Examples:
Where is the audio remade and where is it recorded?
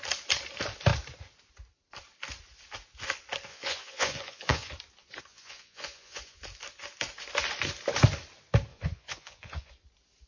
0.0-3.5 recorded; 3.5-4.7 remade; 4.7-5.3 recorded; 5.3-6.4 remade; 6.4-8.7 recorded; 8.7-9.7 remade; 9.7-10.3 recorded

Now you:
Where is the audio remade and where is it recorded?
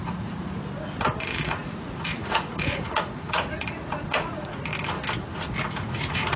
0.0-0.6 remade; 0.6-1.2 recorded; 1.2-4.7 remade; 4.7-5.7 recorded; 5.7-6.4 remade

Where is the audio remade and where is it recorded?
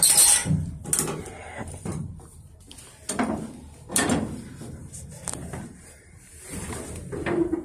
0.0-0.4 recorded; 0.4-0.9 remade; 0.9-1.4 recorded; 1.4-2.1 remade; 2.1-4.8 recorded; 4.8-7.0 remade; 7.0-7.6 recorded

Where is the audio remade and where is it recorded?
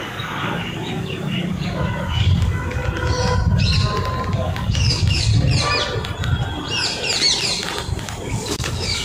0.0-2.8 remade; 2.8-4.3 recorded; 4.3-5.3 remade; 5.3-8.0 recorded; 8.0-9.0 remade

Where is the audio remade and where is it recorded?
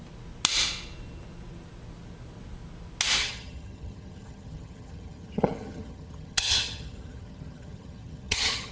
0.0-3.2 recorded; 3.2-8.7 remade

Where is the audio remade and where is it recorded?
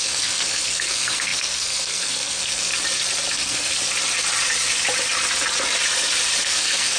0.0-2.7 remade; 2.7-3.3 recorded; 3.3-3.7 remade; 3.7-6.4 recorded; 6.4-7.0 remade